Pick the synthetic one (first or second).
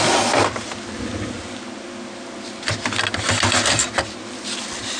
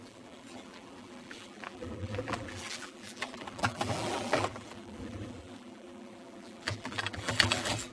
second